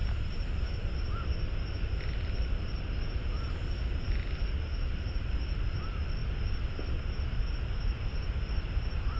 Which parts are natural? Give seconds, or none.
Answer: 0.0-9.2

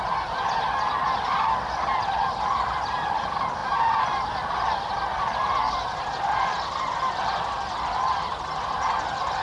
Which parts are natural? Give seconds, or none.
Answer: 0.0-9.4

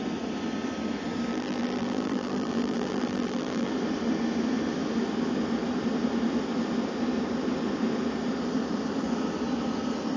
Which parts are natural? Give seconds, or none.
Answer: 0.0-1.3; 3.7-10.2

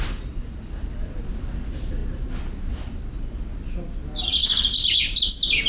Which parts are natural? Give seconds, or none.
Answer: 0.0-5.7